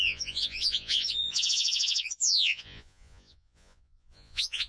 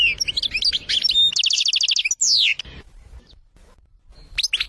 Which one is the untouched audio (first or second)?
second